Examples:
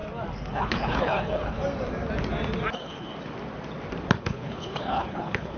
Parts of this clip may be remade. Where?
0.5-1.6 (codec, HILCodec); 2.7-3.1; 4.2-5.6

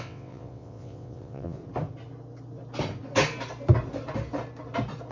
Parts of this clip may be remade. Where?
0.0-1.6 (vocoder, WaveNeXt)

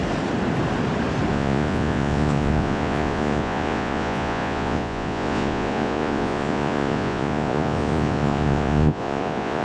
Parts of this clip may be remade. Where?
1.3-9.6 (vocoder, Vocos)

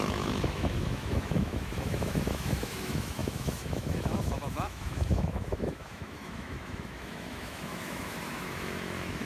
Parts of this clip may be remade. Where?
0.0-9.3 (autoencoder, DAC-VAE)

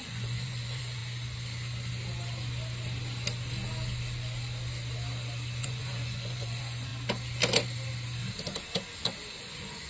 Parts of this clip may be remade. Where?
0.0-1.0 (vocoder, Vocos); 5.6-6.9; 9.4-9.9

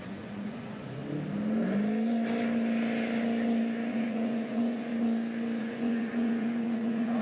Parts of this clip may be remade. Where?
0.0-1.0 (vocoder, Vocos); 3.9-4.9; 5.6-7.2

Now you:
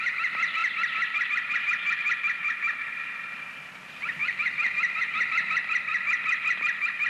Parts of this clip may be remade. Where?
0.0-2.4 (vocoder, BigVGAN v2); 3.6-4.2; 5.3-5.9